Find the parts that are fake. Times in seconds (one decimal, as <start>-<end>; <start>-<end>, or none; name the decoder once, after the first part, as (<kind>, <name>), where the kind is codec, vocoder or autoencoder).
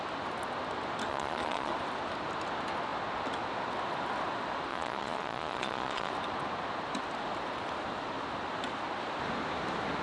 1.1-1.7 (vocoder, Vocos); 4.7-6.1